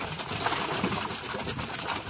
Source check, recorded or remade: recorded